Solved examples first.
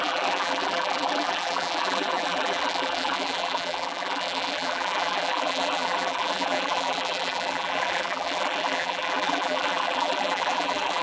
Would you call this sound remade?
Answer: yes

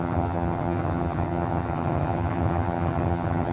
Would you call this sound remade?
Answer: yes